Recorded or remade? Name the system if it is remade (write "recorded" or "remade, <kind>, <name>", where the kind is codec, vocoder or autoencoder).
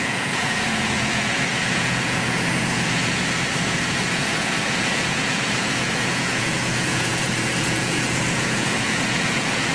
remade, vocoder, Vocos